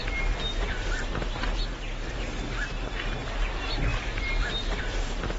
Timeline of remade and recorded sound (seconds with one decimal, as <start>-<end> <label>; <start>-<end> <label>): 0.0-5.4 recorded